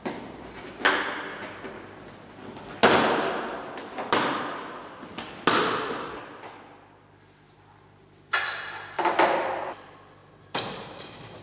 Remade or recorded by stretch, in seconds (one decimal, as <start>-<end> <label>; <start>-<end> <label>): 0.0-10.2 recorded; 10.2-11.0 remade; 11.0-11.4 recorded